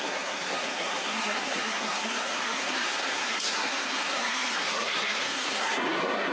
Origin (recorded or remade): remade